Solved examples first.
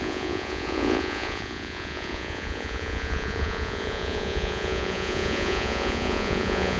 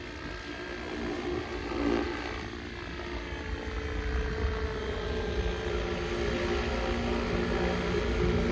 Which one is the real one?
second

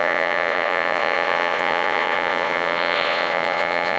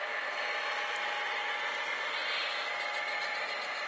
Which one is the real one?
second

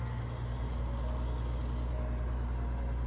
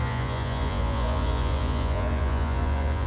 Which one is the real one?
first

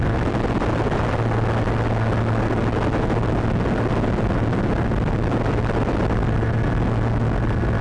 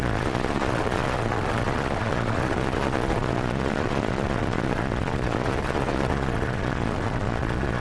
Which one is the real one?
first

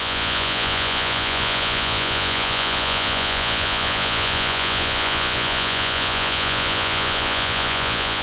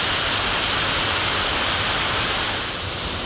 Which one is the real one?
second